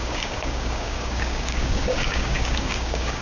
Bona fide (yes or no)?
no